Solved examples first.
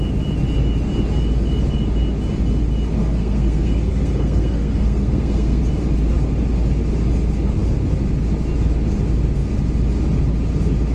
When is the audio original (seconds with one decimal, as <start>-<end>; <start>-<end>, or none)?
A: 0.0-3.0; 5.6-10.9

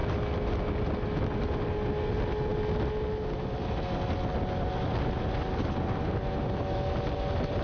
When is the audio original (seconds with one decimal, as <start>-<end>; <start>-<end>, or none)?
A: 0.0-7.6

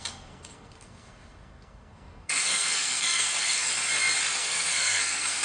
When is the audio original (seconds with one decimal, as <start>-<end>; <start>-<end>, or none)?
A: 3.7-4.4